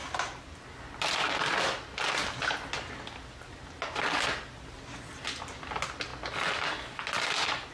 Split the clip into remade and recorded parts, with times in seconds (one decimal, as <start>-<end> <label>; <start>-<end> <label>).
0.0-7.7 recorded